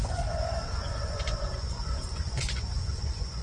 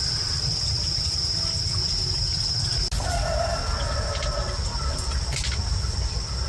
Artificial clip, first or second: first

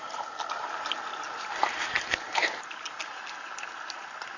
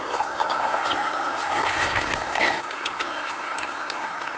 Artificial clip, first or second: second